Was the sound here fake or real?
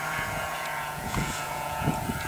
fake